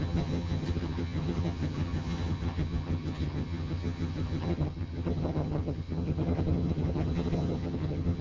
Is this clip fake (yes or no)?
yes